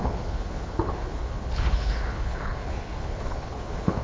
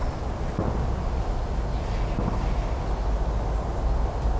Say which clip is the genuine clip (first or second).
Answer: second